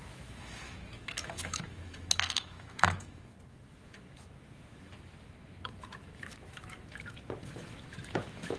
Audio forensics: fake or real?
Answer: fake